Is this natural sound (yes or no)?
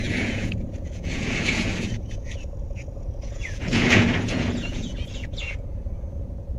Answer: no